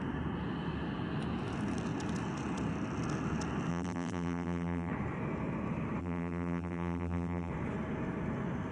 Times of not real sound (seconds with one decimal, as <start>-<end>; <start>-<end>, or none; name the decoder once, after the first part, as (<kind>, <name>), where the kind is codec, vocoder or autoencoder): 3.7-4.9 (vocoder, BigVGAN v2); 6.0-7.5